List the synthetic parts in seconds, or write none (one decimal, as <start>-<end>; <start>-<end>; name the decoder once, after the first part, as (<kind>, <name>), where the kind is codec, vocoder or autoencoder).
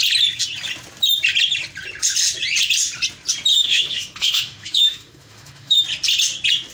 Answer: 3.5-5.8 (autoencoder, DAC-VAE)